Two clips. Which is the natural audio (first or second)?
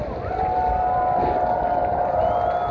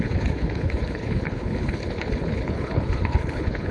first